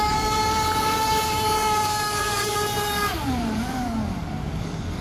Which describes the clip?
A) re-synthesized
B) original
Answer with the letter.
A